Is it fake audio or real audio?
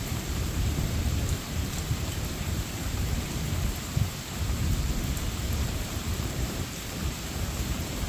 fake